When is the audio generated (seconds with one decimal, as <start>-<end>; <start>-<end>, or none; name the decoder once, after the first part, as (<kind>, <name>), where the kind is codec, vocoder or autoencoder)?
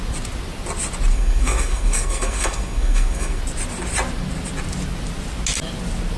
1.1-3.4 (codec, SNAC)